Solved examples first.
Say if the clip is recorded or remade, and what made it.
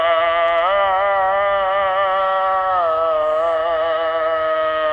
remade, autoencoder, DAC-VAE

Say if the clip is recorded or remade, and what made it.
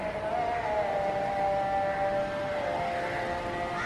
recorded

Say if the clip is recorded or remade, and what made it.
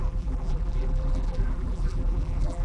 remade, vocoder, BigVGAN v2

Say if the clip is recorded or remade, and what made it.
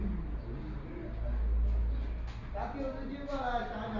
recorded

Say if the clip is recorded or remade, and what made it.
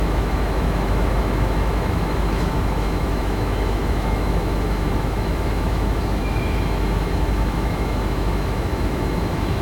remade, autoencoder, DAC-VAE